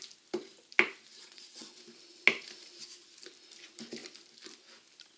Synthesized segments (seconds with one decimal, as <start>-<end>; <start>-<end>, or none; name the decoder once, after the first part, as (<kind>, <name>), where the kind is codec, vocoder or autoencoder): 1.1-1.8 (vocoder, WaveNeXt)